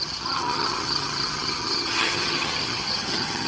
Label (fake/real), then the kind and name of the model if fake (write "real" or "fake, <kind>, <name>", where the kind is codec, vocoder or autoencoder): fake, vocoder, HiFi-GAN